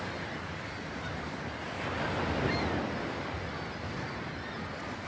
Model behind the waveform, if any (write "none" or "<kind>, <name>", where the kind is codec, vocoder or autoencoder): none